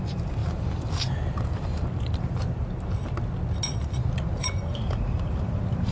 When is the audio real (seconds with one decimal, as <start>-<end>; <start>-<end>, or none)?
2.4-3.7